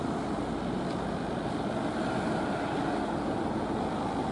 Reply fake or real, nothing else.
real